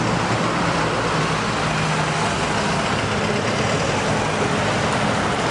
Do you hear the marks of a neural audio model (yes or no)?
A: no